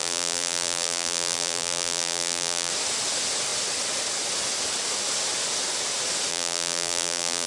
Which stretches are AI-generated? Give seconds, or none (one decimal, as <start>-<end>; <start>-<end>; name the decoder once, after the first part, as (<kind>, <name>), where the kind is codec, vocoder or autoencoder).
0.0-2.7 (vocoder, BigVGAN v2); 6.3-7.5